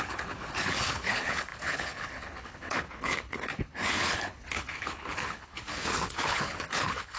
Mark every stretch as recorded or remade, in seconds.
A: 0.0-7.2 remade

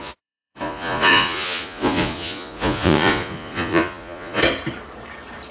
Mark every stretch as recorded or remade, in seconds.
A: 0.0-4.4 remade; 4.4-5.5 recorded

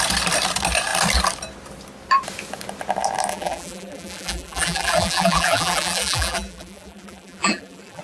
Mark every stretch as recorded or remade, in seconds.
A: 0.0-3.3 recorded; 3.3-8.0 remade

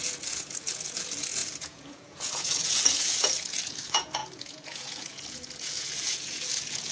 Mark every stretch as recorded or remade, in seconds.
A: 0.0-6.9 remade

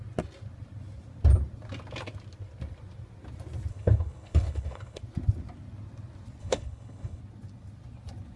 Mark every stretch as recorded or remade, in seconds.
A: 0.0-3.7 recorded; 3.7-5.0 remade; 5.0-6.4 recorded; 6.4-7.2 remade; 7.2-8.4 recorded

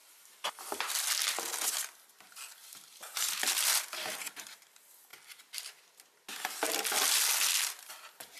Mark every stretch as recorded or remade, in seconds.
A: 0.0-2.6 recorded; 2.6-3.2 remade; 3.2-8.4 recorded

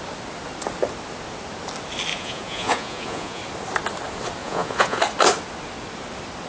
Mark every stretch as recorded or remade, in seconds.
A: 0.0-2.1 recorded; 2.1-3.4 remade; 3.4-4.4 recorded; 4.4-5.0 remade; 5.0-6.5 recorded

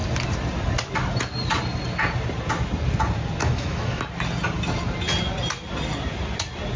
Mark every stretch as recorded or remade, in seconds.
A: 0.0-3.4 recorded; 3.4-4.0 remade; 4.0-6.8 recorded